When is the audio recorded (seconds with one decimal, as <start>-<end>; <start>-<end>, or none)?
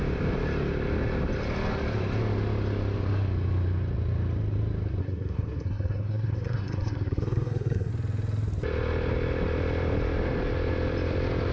0.0-5.0; 7.9-11.5